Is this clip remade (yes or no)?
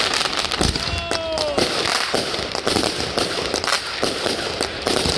no